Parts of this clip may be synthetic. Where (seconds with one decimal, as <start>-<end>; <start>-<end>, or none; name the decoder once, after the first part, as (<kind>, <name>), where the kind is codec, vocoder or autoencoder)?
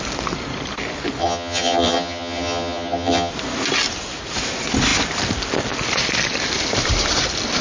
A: 1.2-3.3 (vocoder, HiFi-GAN)